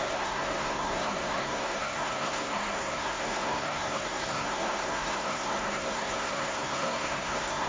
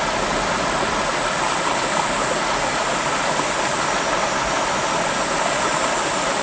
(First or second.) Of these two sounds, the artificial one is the first